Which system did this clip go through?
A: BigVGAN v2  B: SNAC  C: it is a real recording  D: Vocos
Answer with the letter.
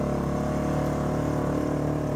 C